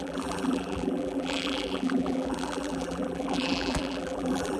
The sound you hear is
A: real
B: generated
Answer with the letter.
B